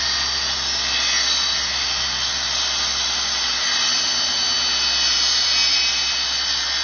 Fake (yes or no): no